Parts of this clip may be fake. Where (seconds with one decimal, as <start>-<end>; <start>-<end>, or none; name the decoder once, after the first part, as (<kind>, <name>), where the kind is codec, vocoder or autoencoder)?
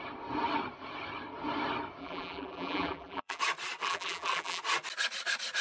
2.0-3.4 (vocoder, BigVGAN v2); 3.8-4.6